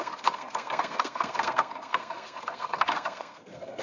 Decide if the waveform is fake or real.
fake